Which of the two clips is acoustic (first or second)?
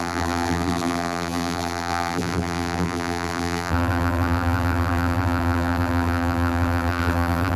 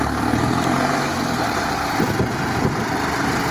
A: second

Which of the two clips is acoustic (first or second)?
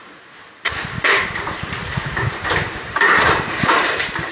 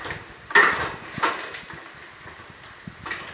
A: second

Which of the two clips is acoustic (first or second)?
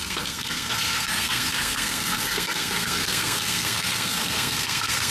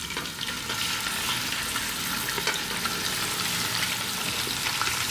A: second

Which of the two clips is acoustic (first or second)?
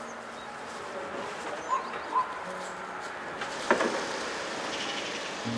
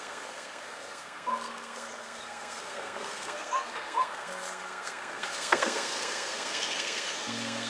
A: first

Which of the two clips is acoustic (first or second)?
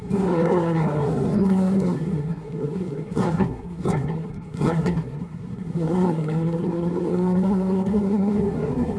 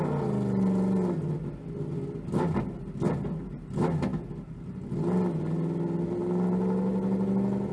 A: second